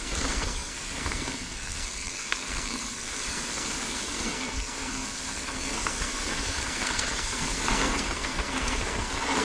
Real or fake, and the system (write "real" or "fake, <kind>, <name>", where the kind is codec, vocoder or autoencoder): fake, codec, SNAC